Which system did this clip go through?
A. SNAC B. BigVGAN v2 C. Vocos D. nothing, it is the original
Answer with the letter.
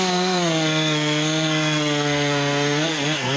A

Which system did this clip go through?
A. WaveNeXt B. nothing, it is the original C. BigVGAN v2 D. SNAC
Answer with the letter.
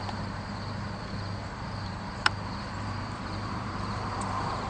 C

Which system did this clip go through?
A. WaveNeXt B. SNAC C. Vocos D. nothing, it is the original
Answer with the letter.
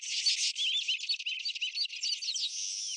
D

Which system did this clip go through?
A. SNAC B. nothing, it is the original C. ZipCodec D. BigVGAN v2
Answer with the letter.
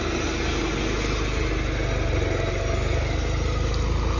B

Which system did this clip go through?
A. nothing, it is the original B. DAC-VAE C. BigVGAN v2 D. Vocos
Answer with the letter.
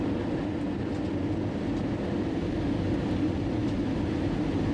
A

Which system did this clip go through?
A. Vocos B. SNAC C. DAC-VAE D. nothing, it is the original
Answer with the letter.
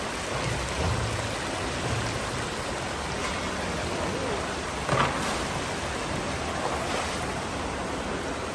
D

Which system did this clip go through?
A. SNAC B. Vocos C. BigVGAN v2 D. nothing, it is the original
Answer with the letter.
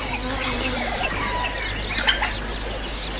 D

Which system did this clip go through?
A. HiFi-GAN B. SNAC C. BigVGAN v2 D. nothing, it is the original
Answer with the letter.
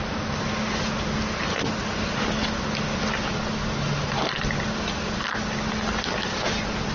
C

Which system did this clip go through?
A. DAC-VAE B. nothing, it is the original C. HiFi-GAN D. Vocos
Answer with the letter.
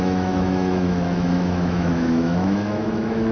A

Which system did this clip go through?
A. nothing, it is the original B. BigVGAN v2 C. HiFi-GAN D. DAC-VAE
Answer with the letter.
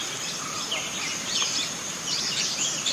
A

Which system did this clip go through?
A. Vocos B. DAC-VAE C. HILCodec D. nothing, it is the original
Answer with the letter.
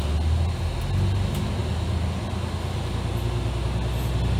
D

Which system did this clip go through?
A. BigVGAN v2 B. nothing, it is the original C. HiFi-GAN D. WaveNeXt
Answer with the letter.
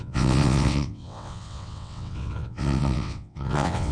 D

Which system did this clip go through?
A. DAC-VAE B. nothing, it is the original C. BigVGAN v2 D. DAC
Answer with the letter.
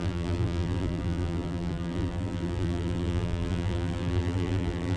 C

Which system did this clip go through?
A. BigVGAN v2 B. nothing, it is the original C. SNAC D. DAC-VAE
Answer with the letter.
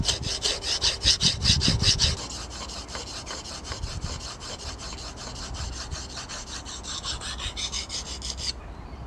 B